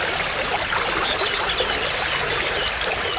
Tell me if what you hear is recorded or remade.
remade